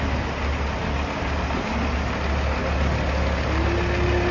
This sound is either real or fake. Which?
real